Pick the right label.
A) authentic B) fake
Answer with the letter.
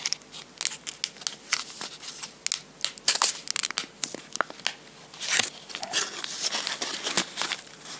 A